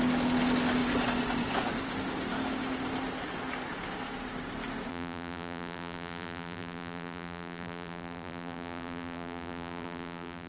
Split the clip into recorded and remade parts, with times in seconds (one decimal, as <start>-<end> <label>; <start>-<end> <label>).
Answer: 0.0-4.9 recorded; 4.9-10.5 remade